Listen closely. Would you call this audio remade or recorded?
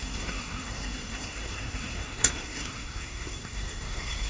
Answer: remade